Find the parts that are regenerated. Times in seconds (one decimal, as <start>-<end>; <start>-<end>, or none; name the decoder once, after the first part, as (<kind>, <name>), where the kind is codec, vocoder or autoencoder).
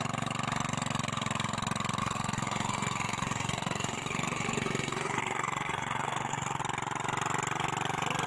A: 2.0-6.6 (codec, SNAC)